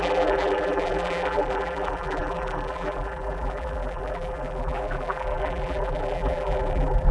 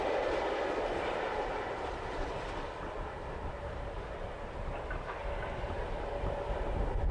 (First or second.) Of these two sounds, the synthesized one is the first